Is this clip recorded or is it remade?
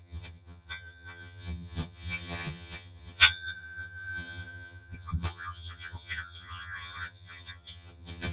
remade